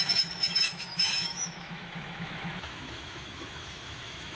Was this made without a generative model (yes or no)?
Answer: no